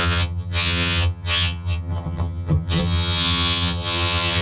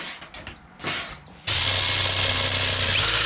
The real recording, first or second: second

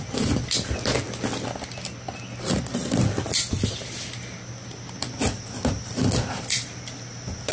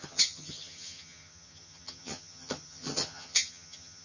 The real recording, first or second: first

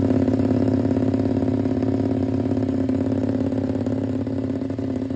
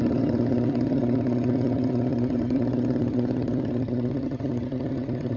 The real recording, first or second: first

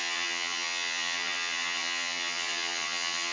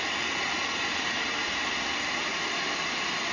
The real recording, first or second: second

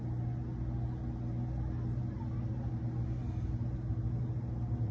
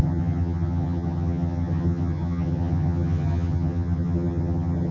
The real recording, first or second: first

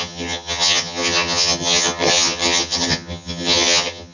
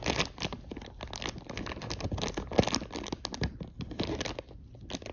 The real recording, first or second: second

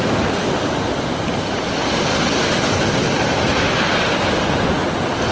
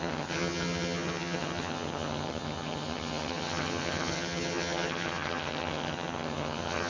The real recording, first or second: first